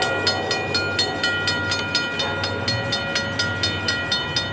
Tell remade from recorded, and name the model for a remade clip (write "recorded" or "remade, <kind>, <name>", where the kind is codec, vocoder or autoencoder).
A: recorded